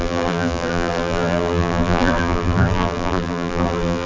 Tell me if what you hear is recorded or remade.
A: remade